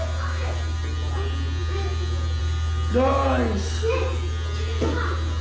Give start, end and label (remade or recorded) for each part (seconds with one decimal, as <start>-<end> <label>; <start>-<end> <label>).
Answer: 0.0-5.4 recorded